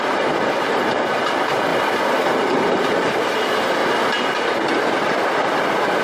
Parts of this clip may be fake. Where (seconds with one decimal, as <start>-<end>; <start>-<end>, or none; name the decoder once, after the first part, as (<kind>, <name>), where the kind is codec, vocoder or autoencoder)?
0.0-1.7 (vocoder, BigVGAN v2); 2.4-3.8; 4.8-6.0